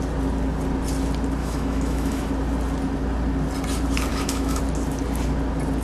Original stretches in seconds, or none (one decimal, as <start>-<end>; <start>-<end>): 0.0-1.4; 2.3-4.1; 4.6-5.8